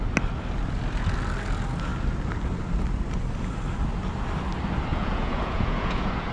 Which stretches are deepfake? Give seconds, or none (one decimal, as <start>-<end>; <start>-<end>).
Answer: 4.9-6.3